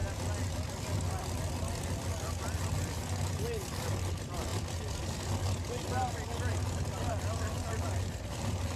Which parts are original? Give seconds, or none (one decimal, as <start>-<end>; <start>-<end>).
0.0-8.8